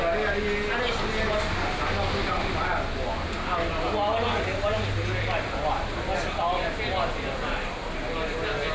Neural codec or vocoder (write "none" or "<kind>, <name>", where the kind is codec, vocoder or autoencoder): none